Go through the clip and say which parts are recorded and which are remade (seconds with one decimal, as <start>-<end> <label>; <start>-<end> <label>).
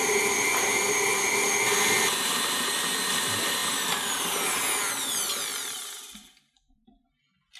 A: 0.0-7.6 recorded